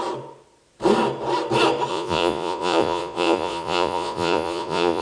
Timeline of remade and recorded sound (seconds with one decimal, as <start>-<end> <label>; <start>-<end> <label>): 0.0-1.9 recorded; 1.9-5.0 remade